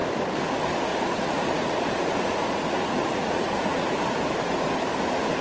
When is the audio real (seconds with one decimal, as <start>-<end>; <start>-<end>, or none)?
0.0-0.9; 4.1-5.4